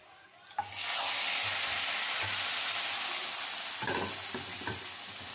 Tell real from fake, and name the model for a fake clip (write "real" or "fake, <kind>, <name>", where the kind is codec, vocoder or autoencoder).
real